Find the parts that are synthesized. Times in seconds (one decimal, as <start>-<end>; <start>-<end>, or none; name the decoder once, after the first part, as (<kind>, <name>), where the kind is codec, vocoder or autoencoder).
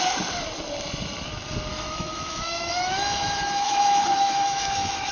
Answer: 1.7-5.1 (autoencoder, DAC-VAE)